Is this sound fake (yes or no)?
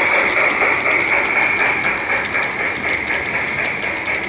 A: no